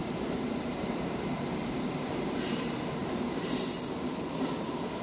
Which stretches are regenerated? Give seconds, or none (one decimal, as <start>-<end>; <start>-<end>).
0.0-3.0